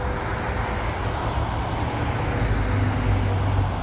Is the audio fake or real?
real